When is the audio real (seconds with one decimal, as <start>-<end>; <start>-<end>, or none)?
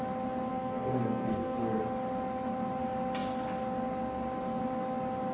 0.0-0.5; 1.6-5.3